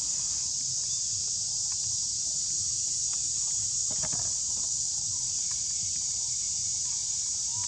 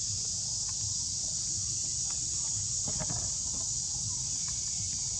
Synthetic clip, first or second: first